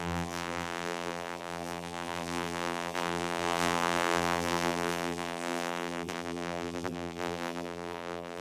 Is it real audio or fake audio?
fake